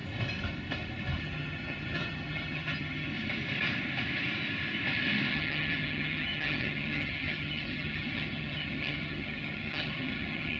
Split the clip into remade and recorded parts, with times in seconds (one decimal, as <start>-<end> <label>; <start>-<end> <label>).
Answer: 0.0-1.2 recorded; 1.2-3.1 remade; 3.1-5.3 recorded; 5.3-10.6 remade